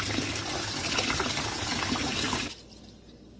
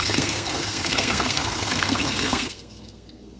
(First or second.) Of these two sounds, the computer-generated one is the second